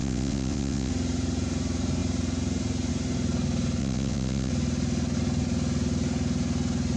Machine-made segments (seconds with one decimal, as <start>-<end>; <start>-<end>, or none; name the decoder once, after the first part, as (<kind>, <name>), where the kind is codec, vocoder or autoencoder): 0.0-0.9 (vocoder, WaveNeXt); 3.8-4.5